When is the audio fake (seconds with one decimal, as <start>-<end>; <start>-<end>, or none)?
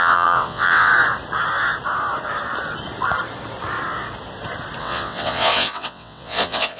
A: 0.0-0.9; 4.8-6.8